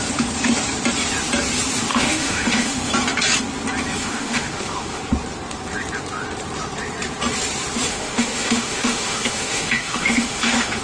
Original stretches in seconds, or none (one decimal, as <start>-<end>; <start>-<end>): 0.0-1.9; 2.9-4.0; 5.0-7.9